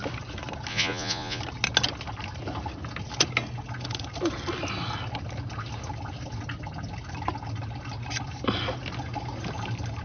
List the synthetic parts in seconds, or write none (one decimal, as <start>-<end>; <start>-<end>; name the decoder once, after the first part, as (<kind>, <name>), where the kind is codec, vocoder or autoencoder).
0.7-1.4 (vocoder, Vocos)